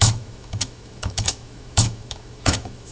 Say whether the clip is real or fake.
fake